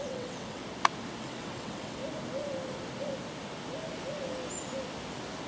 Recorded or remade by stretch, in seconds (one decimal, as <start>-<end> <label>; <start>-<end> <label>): 0.0-0.6 remade; 0.6-1.2 recorded; 1.2-2.0 remade; 2.0-5.5 recorded